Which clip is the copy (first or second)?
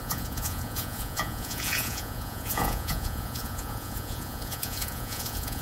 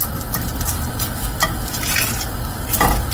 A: first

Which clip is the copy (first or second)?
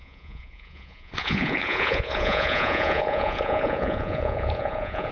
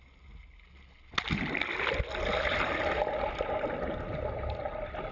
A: first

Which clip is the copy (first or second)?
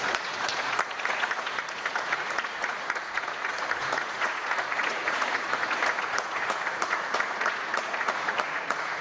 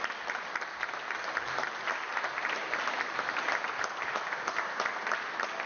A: first